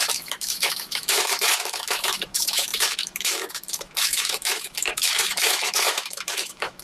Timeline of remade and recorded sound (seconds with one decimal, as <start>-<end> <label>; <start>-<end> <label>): 0.0-6.8 remade